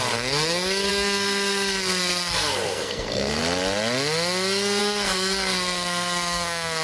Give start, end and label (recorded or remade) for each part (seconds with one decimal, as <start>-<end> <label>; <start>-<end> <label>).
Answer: 0.0-3.4 remade; 3.4-4.8 recorded; 4.8-6.8 remade